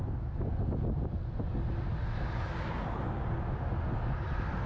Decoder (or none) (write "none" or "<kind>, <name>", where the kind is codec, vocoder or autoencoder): none